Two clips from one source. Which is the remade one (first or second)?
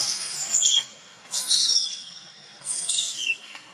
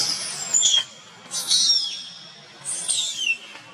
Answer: first